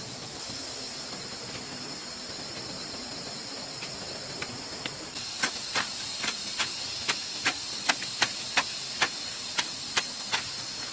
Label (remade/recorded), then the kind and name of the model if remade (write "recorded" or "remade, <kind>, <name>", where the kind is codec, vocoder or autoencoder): recorded